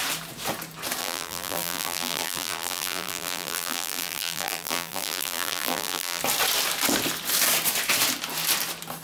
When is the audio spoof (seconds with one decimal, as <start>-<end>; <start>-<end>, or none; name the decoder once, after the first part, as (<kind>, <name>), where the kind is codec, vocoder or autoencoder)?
1.0-6.2 (vocoder, BigVGAN v2)